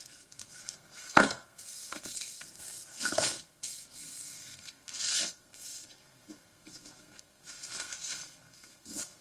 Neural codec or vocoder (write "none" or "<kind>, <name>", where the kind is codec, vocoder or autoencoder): codec, SNAC